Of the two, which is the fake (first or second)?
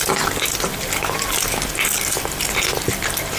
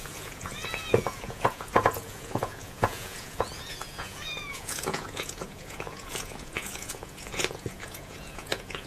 second